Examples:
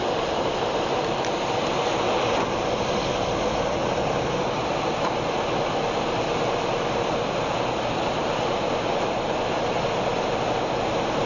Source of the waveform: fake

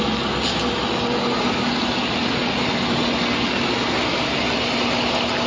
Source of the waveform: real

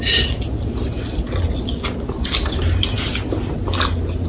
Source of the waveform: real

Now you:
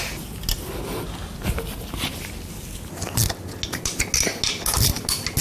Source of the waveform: real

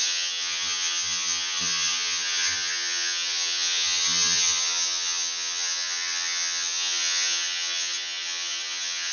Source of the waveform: fake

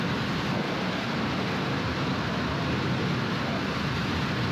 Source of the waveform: real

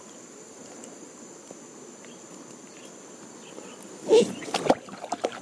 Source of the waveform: real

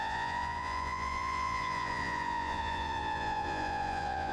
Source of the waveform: fake